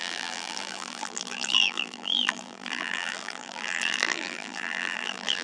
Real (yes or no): no